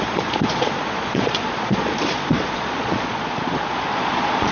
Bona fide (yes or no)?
no